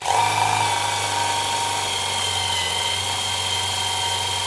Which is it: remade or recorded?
recorded